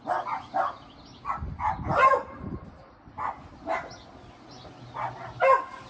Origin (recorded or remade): recorded